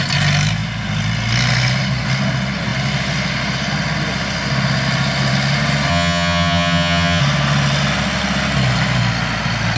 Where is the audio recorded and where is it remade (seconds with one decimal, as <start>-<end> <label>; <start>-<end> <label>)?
0.0-5.9 recorded; 5.9-7.2 remade; 7.2-9.8 recorded